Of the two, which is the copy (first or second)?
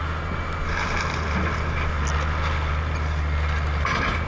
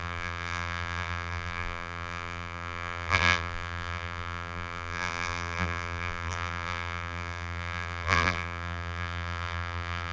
second